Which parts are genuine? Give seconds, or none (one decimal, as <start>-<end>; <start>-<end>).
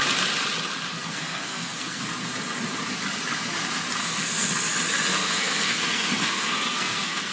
0.0-1.0; 2.0-4.0; 4.5-5.1